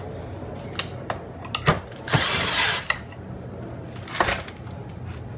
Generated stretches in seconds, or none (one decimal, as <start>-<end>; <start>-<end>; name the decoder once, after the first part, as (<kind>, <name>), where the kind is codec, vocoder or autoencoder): none